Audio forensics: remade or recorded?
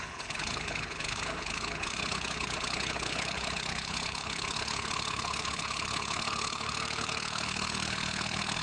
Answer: remade